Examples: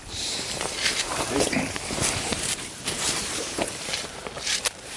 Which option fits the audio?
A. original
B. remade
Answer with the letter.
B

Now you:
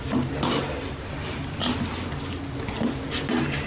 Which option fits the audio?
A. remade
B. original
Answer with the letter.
B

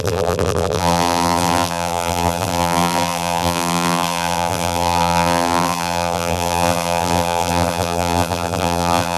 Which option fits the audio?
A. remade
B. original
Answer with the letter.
A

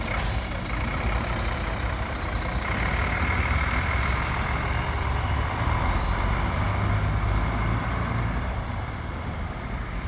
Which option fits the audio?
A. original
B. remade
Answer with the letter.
B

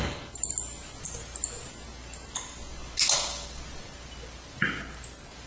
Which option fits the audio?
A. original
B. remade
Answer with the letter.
A